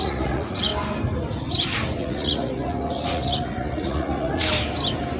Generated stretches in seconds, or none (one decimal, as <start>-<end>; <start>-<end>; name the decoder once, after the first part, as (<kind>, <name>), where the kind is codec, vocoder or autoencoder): 0.0-0.7 (vocoder, Vocos); 2.0-4.4